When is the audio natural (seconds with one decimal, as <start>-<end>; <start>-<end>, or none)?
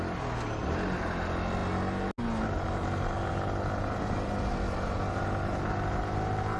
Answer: 0.0-6.6